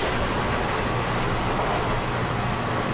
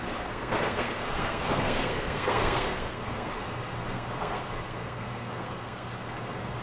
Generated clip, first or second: second